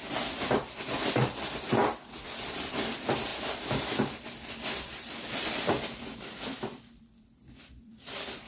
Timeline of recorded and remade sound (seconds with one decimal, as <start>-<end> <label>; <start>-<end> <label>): 0.0-8.5 remade